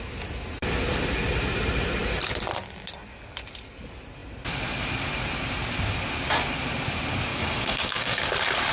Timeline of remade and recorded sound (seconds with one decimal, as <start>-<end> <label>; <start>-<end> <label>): 0.0-7.3 recorded; 7.3-8.2 remade; 8.2-8.7 recorded